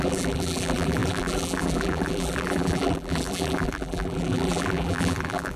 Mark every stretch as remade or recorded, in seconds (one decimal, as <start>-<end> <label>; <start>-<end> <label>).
0.0-5.6 remade